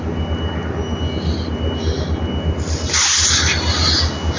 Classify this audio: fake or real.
real